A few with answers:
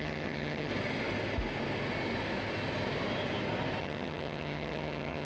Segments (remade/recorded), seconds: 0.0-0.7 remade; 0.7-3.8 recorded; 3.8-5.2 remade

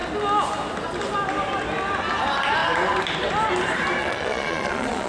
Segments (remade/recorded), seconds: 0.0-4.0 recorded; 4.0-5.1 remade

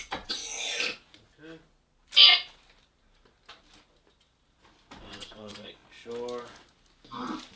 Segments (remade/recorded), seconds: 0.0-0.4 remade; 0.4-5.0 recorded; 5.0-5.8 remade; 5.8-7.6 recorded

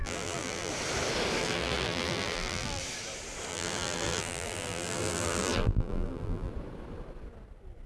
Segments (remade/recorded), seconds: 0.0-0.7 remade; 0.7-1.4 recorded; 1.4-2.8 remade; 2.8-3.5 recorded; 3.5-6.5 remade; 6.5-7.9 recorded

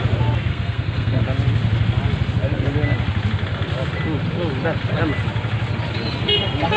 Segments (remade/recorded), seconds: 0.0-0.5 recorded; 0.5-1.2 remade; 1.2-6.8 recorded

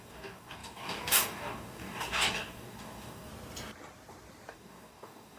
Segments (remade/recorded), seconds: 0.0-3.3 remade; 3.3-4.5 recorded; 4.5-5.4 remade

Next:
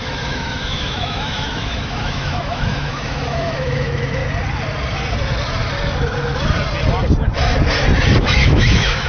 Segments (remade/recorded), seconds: 0.0-4.2 remade; 4.2-8.2 recorded; 8.2-9.1 remade